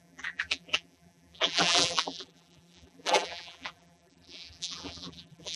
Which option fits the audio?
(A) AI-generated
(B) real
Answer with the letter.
A